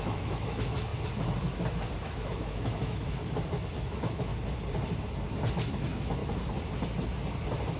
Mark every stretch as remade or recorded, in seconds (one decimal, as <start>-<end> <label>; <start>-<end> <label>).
0.0-0.9 remade; 0.9-2.0 recorded; 2.0-3.2 remade; 3.2-3.7 recorded; 3.7-4.3 remade; 4.3-5.5 recorded; 5.5-6.2 remade; 6.2-7.8 recorded

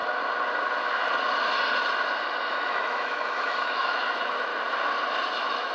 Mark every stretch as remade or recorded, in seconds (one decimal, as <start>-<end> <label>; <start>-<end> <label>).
0.0-2.5 recorded; 2.5-4.5 remade; 4.5-5.3 recorded; 5.3-5.7 remade

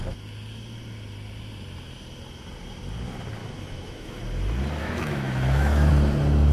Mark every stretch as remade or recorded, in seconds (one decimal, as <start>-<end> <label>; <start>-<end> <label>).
0.0-3.4 recorded; 3.4-4.2 remade; 4.2-4.8 recorded; 4.8-5.9 remade; 5.9-6.5 recorded

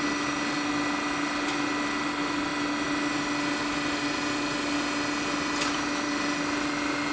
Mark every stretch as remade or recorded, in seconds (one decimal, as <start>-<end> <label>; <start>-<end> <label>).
0.0-7.1 recorded

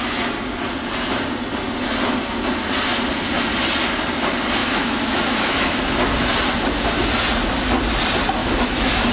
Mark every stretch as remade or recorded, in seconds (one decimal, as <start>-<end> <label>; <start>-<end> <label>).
0.0-4.6 recorded; 4.6-5.8 remade; 5.8-8.4 recorded; 8.4-9.1 remade